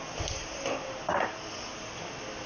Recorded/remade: recorded